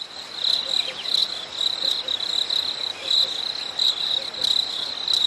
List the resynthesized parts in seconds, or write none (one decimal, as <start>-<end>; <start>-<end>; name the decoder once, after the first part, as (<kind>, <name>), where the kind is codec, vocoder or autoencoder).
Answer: none